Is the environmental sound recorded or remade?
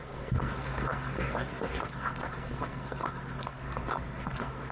remade